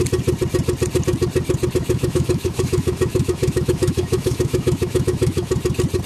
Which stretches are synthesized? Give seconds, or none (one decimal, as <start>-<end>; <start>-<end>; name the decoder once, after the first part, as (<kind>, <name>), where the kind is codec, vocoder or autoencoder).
1.8-5.5 (autoencoder, DAC-VAE)